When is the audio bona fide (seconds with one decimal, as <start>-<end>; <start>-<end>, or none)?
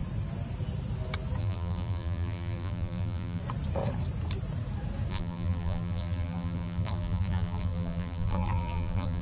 0.0-1.4; 3.4-5.1